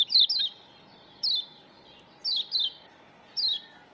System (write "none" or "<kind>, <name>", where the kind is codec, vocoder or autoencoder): none